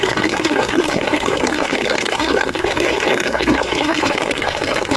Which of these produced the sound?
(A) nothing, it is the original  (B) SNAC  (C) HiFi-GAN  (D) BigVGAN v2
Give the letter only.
B